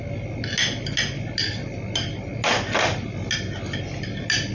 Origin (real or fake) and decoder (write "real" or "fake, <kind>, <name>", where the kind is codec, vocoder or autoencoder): real